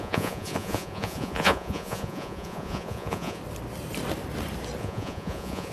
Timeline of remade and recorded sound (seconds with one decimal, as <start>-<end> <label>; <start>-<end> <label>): 0.0-3.4 remade; 3.4-4.8 recorded; 4.8-5.7 remade